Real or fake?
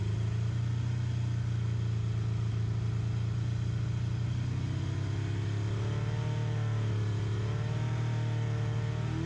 real